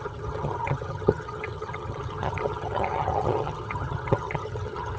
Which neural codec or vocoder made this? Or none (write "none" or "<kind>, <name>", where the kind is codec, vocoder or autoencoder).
vocoder, HiFi-GAN